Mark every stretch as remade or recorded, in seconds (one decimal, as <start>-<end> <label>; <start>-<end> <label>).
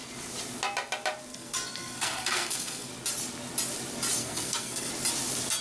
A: 0.0-1.3 recorded; 1.3-2.9 remade; 2.9-4.2 recorded; 4.2-4.9 remade; 4.9-5.6 recorded